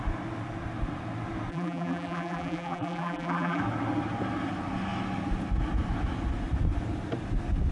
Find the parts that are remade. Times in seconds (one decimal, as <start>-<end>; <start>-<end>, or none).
1.5-3.6